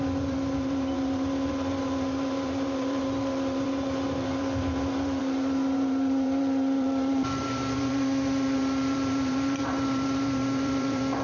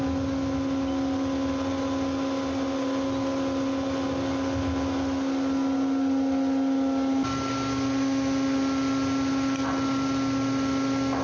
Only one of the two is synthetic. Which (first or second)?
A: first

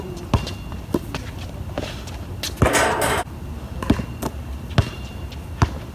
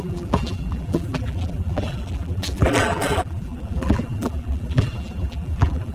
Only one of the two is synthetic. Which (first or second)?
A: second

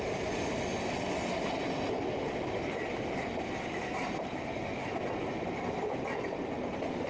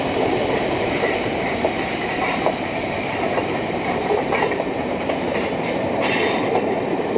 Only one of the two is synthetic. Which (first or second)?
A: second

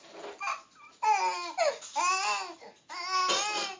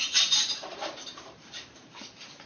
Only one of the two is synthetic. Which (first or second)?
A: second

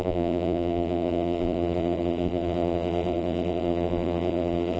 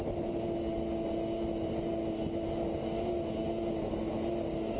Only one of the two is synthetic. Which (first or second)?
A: first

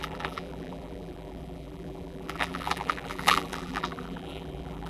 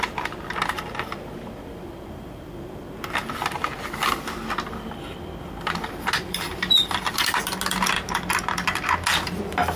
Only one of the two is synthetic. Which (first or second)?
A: first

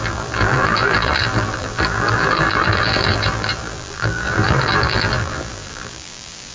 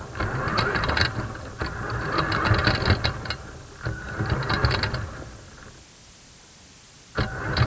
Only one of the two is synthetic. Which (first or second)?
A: first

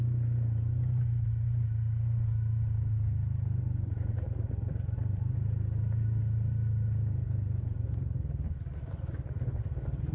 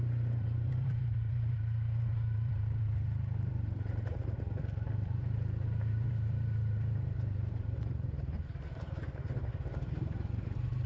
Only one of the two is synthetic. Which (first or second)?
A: second